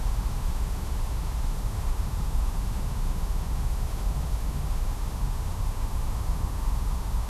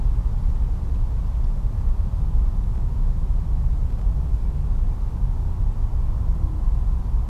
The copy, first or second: first